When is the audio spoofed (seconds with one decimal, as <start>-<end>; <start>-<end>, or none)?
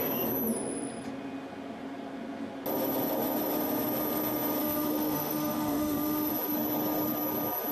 4.6-6.3